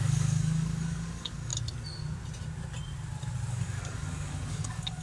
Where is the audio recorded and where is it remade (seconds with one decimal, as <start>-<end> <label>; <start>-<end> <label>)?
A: 0.0-1.5 remade; 1.5-3.5 recorded; 3.5-5.0 remade